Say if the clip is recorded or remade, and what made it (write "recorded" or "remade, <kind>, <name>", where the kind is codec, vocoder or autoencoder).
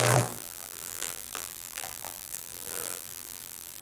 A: remade, vocoder, BigVGAN v2